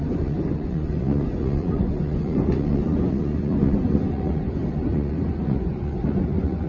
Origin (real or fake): fake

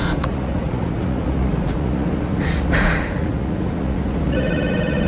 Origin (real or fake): fake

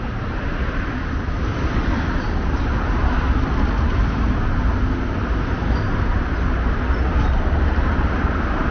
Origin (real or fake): real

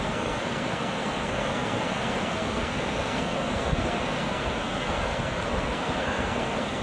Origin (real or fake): fake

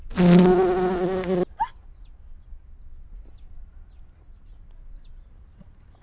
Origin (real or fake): real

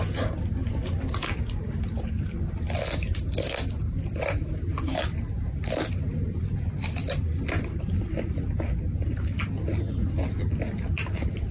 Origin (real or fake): real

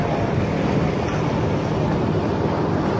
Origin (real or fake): real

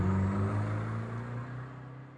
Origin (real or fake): real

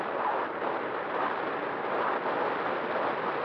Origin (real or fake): real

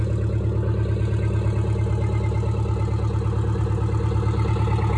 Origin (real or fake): real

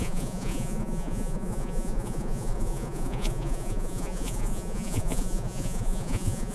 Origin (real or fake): fake